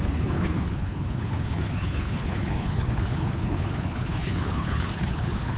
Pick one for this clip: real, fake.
fake